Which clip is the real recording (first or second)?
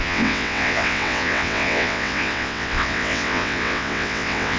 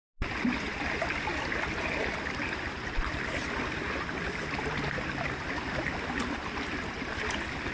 second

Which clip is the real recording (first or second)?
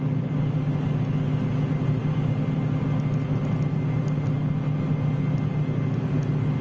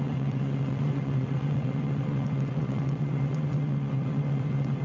first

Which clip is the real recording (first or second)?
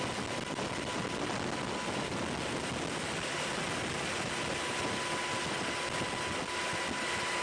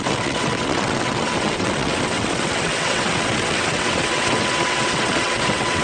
first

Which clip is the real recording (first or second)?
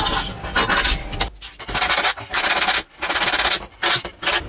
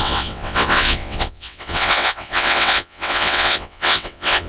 first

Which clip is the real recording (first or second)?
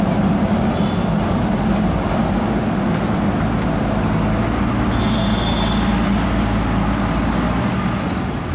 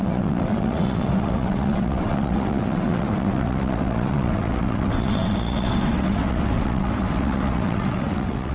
first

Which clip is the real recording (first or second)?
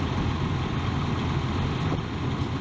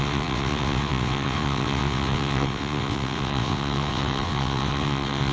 first